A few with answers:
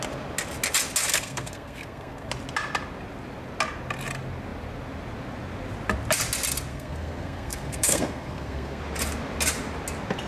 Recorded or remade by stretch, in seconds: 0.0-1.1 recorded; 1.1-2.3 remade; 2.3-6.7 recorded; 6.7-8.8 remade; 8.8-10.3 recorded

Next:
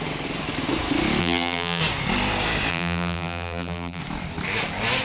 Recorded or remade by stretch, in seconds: 0.0-1.2 recorded; 1.2-1.8 remade; 1.8-2.7 recorded; 2.7-4.0 remade; 4.0-5.0 recorded

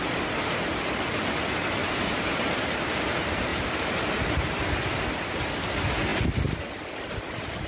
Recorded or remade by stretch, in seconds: 0.0-1.8 recorded; 1.8-2.4 remade; 2.4-3.5 recorded; 3.5-4.2 remade; 4.2-7.7 recorded